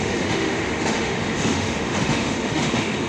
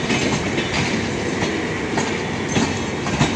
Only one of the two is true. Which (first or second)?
second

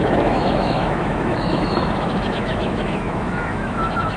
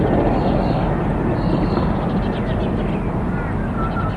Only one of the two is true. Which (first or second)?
second